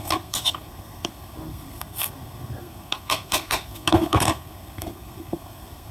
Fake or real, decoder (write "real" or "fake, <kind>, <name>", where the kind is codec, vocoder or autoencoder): fake, codec, SNAC